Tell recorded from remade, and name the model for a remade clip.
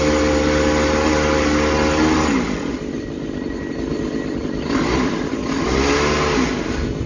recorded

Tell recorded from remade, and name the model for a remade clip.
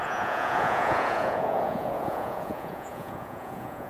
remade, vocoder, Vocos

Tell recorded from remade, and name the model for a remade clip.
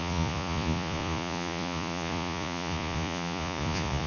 remade, vocoder, Vocos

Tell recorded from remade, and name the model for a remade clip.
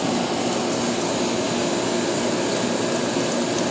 recorded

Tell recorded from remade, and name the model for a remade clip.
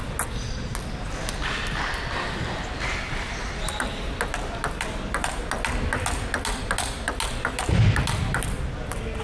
recorded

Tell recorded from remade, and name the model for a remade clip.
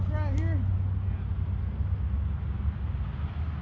recorded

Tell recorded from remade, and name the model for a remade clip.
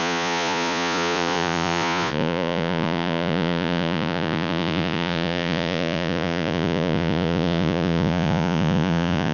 remade, vocoder, Vocos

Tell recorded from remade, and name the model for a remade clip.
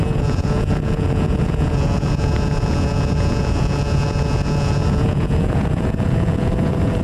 remade, vocoder, Vocos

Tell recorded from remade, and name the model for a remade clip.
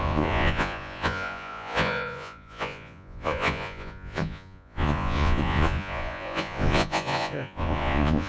remade, vocoder, Vocos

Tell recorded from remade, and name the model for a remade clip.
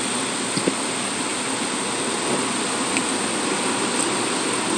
recorded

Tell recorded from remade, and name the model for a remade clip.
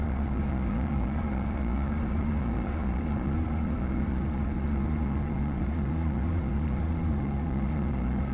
remade, vocoder, Vocos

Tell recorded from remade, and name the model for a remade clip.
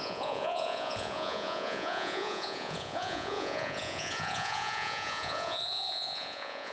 remade, vocoder, Vocos